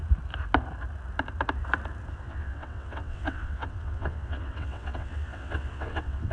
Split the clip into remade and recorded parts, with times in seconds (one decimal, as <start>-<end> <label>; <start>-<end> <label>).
0.0-2.1 recorded; 2.1-6.3 remade